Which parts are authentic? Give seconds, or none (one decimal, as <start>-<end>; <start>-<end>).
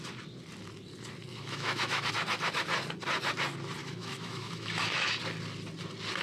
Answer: 0.0-1.3; 2.1-3.8; 5.2-6.2